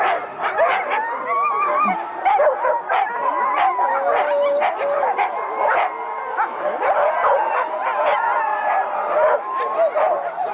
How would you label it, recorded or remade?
recorded